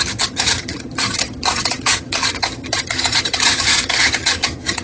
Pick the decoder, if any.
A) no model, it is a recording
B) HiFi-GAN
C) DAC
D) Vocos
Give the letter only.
B